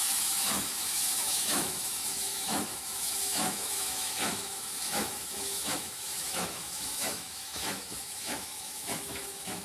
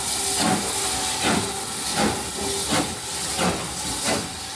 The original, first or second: second